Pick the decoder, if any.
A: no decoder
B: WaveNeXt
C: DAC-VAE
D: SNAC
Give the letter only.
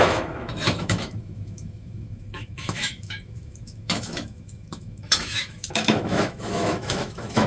C